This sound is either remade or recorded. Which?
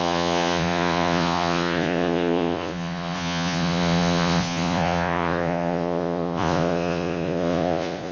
remade